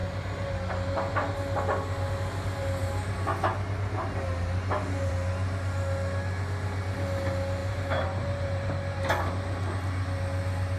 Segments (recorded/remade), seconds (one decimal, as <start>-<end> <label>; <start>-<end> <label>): 0.0-7.6 recorded; 7.6-8.7 remade; 8.7-10.8 recorded